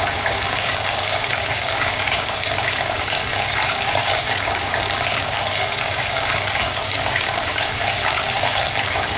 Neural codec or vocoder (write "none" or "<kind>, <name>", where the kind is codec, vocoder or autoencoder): codec, DAC